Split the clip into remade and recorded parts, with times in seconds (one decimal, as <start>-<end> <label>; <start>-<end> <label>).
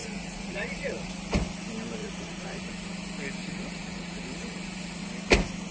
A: 0.0-1.1 remade; 1.1-2.0 recorded; 2.0-2.7 remade; 2.7-3.4 recorded; 3.4-5.0 remade; 5.0-5.7 recorded